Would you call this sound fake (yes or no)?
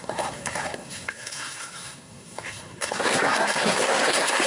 yes